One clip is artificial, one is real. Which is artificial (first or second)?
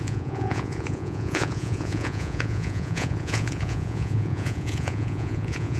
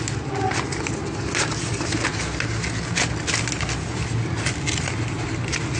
first